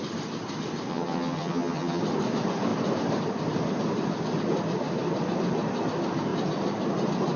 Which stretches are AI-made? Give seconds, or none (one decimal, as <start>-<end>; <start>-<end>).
0.9-2.0